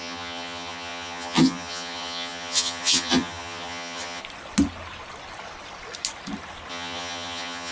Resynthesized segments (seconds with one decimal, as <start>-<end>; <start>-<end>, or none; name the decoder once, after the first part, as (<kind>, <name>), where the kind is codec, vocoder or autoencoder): 0.0-4.2 (vocoder, HiFi-GAN); 6.7-7.7